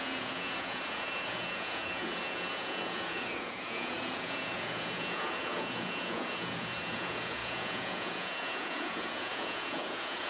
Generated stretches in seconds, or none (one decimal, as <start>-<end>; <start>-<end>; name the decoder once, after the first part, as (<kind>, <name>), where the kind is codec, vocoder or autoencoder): 0.0-10.3 (vocoder, Vocos)